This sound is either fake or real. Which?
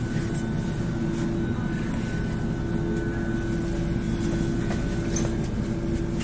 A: real